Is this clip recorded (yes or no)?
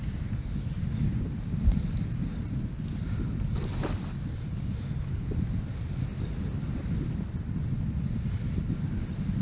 yes